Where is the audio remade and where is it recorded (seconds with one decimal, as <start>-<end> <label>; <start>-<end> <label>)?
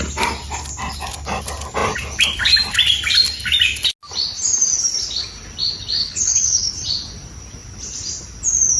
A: 0.0-6.0 recorded; 6.0-6.7 remade; 6.7-8.8 recorded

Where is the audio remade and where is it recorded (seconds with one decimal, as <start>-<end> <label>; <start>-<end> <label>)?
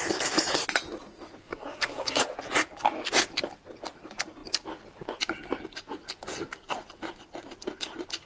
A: 0.0-1.4 recorded; 1.4-2.2 remade; 2.2-8.3 recorded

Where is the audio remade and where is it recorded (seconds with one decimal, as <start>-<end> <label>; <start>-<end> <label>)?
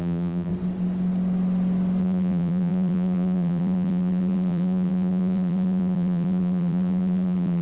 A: 0.0-0.5 remade; 0.5-2.0 recorded; 2.0-7.6 remade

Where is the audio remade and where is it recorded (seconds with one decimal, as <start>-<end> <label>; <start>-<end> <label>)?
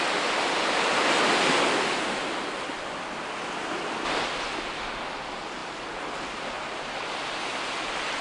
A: 0.0-8.2 recorded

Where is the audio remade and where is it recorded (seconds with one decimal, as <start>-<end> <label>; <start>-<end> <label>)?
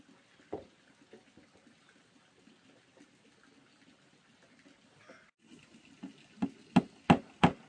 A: 0.0-7.7 recorded